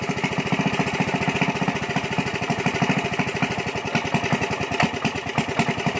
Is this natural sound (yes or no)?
yes